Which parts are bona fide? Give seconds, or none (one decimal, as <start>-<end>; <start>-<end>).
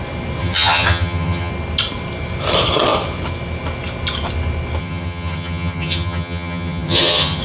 0.0-0.4; 1.5-4.8